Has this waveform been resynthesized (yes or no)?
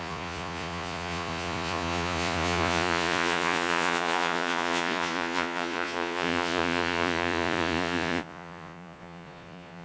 yes